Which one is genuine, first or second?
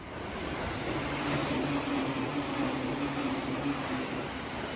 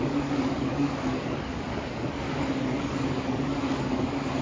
first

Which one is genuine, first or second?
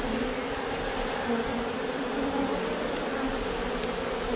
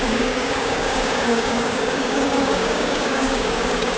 first